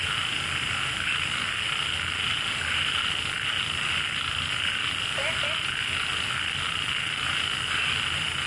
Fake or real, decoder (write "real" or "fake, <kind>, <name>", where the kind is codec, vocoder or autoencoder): real